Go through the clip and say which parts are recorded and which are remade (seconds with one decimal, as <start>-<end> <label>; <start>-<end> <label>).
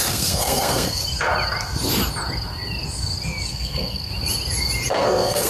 0.0-1.0 remade; 1.0-3.5 recorded; 3.5-4.1 remade; 4.1-4.9 recorded; 4.9-5.5 remade